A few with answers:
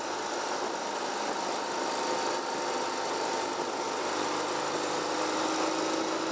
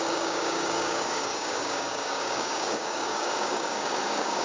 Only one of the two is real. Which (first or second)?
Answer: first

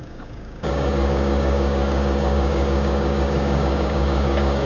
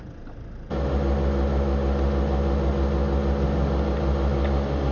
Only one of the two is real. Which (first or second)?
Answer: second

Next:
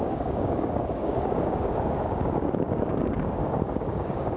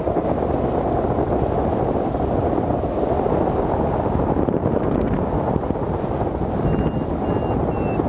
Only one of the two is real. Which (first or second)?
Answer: second